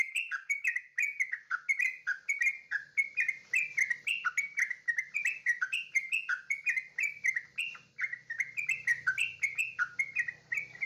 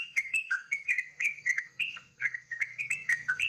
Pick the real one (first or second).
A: first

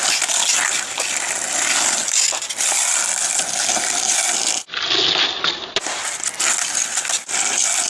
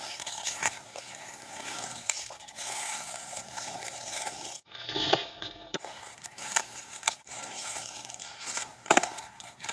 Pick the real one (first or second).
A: first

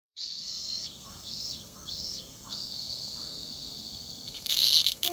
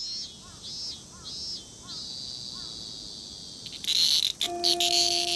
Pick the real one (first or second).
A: second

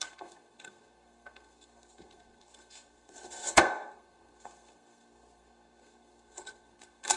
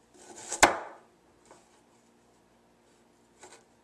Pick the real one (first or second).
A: second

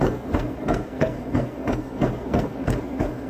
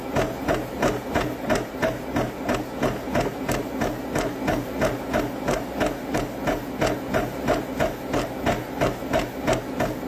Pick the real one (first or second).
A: second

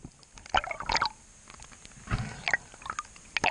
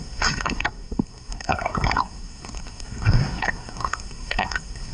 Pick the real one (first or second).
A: first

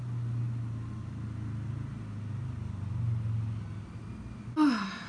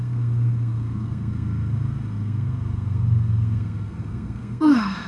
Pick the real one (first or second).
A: first